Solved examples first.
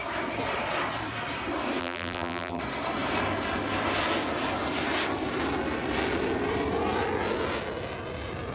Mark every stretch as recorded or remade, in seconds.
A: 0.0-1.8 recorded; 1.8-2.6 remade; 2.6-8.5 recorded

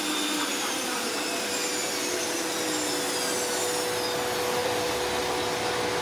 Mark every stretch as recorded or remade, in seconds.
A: 0.0-0.5 recorded; 0.5-1.6 remade; 1.6-6.0 recorded

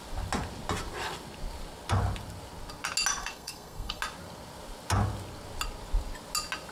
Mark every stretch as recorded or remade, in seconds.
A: 0.0-3.2 recorded; 3.2-4.0 remade; 4.0-6.7 recorded

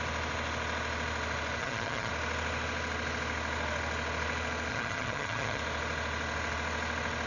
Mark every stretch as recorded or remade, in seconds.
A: 0.0-1.6 recorded; 1.6-2.1 remade; 2.1-4.7 recorded; 4.7-5.6 remade; 5.6-7.3 recorded